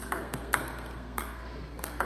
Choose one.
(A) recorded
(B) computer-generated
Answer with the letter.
B